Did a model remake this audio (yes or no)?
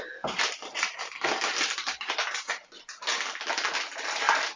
no